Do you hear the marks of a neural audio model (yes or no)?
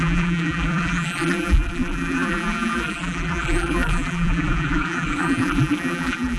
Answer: yes